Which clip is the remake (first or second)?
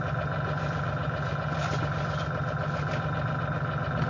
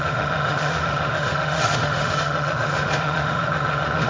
second